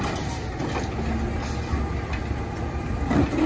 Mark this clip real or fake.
real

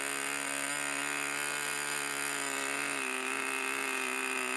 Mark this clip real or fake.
real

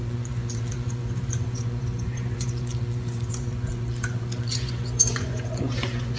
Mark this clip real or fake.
fake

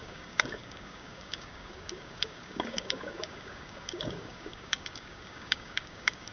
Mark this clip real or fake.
fake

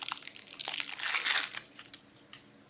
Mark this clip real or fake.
real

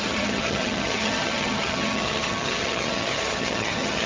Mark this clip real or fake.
fake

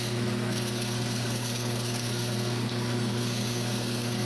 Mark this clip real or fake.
fake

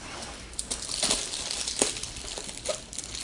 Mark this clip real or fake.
real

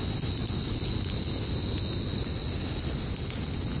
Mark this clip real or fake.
real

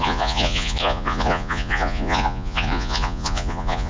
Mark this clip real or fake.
fake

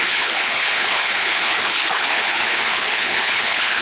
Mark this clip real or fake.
fake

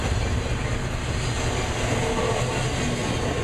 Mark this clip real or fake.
real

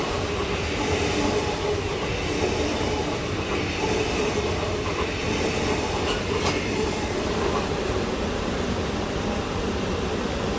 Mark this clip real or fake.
real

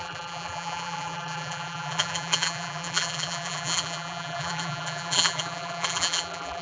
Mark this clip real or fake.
fake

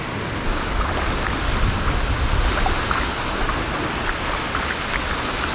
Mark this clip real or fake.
real